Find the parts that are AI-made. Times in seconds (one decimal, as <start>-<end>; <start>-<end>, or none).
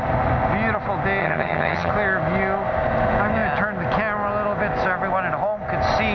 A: 1.2-1.9